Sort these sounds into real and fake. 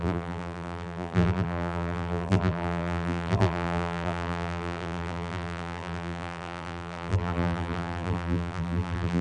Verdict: fake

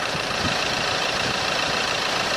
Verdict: fake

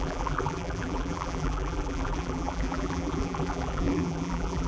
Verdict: fake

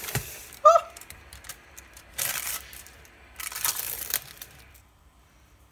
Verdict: fake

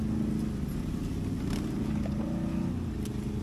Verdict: real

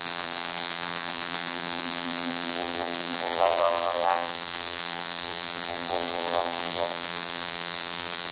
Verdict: fake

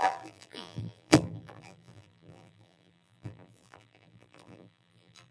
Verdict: fake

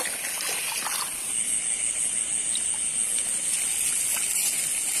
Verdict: real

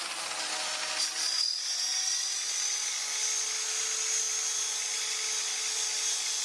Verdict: real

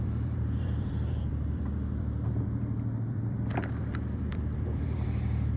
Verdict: fake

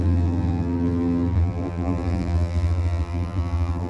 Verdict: fake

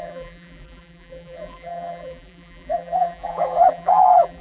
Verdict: fake